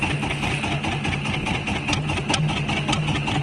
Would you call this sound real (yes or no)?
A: yes